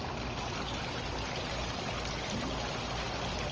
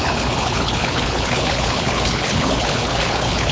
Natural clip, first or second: first